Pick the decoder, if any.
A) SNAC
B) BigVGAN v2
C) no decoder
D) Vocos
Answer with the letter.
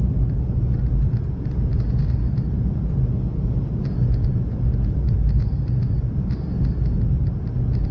C